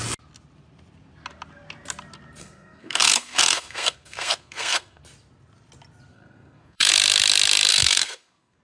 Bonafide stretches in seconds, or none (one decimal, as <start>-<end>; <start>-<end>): 0.0-2.4; 5.0-6.1; 6.9-7.7